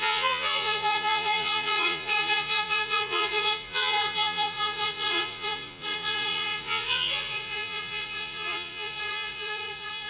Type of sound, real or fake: fake